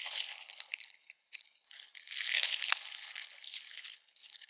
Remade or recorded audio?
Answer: remade